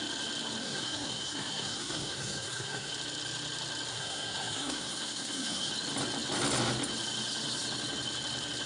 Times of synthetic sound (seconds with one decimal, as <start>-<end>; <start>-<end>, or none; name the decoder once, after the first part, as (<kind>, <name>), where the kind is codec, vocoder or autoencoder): 0.6-2.9 (codec, SNAC); 3.9-5.7